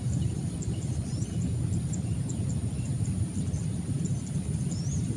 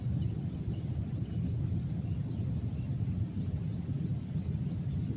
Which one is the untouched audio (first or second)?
second